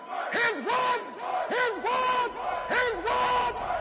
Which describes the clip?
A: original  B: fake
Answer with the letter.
A